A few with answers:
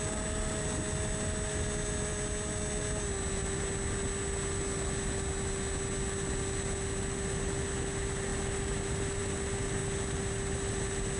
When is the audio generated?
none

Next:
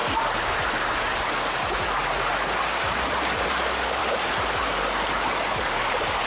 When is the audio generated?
3.5-4.0 (codec, DAC); 5.5-6.3

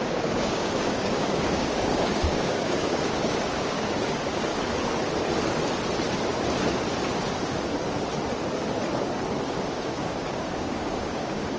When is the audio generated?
0.0-4.5 (codec, DAC); 9.6-11.6

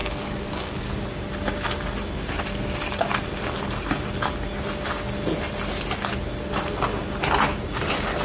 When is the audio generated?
0.0-0.9 (codec, DAC)

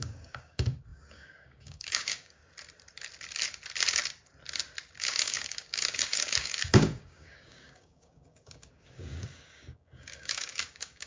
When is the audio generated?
0.0-2.4 (codec, DAC); 5.0-11.1